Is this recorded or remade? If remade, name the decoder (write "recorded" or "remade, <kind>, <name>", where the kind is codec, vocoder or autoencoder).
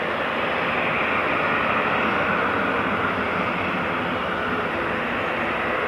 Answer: recorded